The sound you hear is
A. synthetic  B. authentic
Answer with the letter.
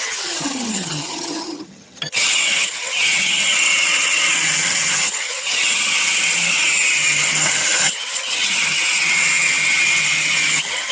A